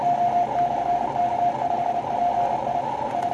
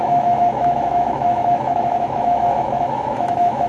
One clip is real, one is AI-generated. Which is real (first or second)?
first